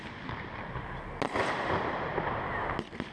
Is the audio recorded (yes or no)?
yes